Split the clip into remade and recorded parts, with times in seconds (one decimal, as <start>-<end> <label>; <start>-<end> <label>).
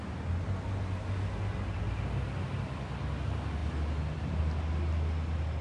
0.0-5.6 recorded